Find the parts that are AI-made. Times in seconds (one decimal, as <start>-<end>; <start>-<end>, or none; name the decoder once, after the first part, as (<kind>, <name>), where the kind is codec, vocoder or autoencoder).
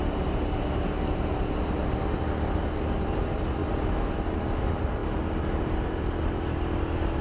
none